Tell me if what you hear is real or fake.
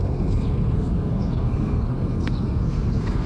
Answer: fake